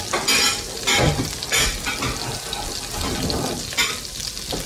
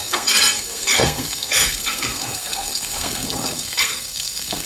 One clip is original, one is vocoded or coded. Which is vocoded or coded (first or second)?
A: second